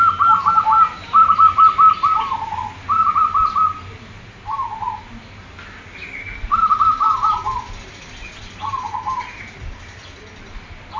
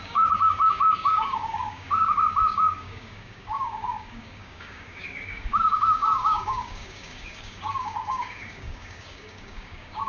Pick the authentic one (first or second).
first